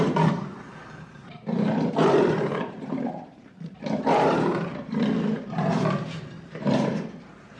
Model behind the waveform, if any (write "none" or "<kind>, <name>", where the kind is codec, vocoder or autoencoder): vocoder, BigVGAN v2